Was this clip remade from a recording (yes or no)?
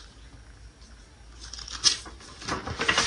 no